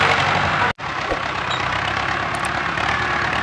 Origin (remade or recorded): recorded